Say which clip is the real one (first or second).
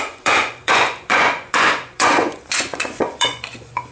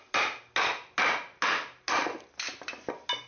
second